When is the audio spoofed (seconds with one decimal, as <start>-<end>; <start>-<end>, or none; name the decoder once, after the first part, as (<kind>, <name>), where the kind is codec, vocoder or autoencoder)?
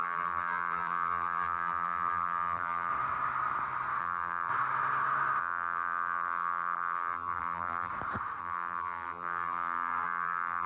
0.0-2.9 (vocoder, BigVGAN v2); 4.0-4.5; 5.4-7.9; 8.4-10.7